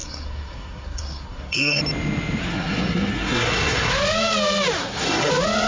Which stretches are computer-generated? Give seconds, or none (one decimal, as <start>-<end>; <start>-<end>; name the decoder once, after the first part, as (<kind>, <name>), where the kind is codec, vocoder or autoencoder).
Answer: 0.0-1.8 (codec, SNAC); 2.5-3.9; 4.8-5.3

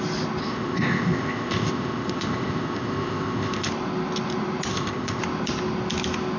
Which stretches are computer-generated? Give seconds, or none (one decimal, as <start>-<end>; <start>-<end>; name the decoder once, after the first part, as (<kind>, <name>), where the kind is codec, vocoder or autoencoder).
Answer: 0.4-3.7 (codec, ZipCodec); 4.7-5.2

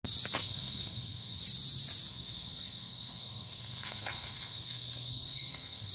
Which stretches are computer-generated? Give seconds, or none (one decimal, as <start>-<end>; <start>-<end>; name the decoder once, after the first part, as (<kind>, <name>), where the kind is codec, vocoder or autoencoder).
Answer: 0.4-1.4 (codec, SNAC); 2.1-5.9

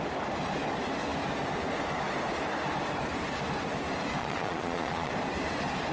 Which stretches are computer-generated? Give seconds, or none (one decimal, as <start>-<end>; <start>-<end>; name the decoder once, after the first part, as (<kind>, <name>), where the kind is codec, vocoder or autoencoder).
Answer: 4.2-5.1 (vocoder, Vocos)

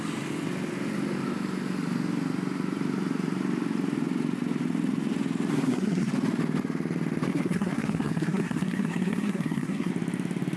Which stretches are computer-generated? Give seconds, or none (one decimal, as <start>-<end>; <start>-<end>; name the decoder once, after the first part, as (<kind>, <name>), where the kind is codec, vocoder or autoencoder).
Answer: 5.5-6.1 (codec, SNAC); 7.3-9.9

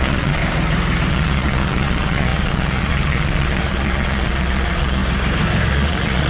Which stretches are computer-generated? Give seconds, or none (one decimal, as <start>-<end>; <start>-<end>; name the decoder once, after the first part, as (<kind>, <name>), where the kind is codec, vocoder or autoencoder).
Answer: 0.0-0.4 (vocoder, Vocos); 1.1-5.0; 5.7-6.3

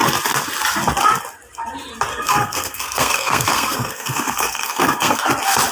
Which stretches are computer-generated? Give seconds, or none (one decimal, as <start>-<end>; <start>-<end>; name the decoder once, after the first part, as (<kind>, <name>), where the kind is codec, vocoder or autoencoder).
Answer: 2.1-5.3 (codec, SNAC)

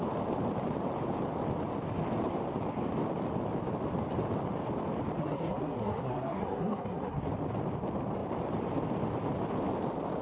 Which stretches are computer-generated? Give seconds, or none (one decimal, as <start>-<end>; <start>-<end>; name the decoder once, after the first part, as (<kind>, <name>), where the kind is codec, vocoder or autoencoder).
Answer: 5.2-7.2 (codec, SNAC)